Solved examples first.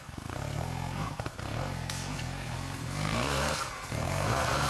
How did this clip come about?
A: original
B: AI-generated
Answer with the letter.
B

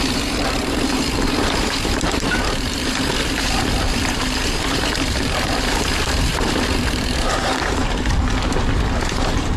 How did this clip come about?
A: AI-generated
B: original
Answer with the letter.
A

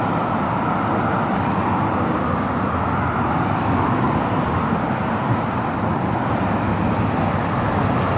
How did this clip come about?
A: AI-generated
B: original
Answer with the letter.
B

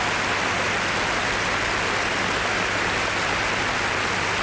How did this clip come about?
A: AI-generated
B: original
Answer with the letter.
B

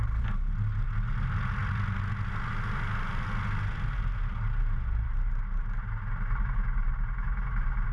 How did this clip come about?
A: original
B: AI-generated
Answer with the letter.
A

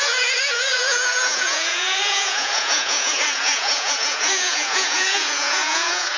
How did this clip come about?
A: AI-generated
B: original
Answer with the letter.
A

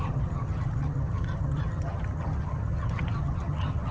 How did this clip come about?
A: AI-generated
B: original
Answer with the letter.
A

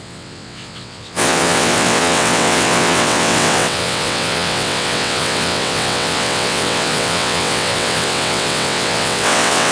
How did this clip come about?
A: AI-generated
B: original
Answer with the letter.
A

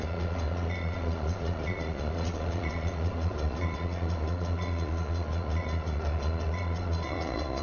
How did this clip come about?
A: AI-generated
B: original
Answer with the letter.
A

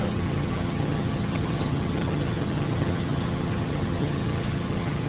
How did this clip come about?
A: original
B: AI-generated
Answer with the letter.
B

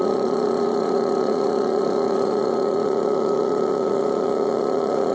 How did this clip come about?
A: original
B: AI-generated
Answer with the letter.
B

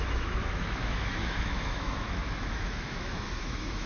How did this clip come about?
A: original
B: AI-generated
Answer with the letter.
B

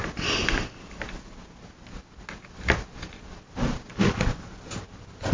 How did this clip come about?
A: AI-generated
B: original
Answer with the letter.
B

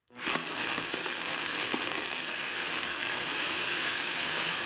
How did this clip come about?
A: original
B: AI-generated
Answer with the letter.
B